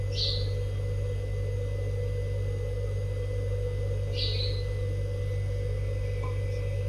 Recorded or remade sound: recorded